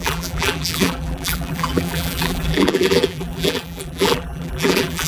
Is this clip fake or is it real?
fake